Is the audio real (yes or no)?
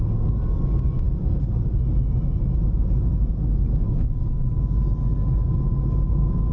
yes